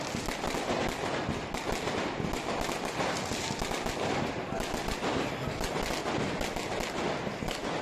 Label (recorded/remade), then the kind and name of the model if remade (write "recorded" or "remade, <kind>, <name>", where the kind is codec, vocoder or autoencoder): recorded